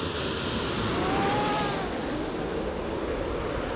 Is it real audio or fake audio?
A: real